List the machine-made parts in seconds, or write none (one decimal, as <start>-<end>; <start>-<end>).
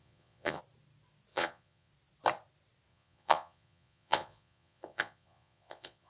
0.0-0.6; 1.3-1.9; 2.9-6.1